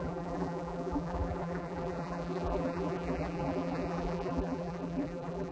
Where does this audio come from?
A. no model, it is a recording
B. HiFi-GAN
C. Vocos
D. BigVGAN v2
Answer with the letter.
D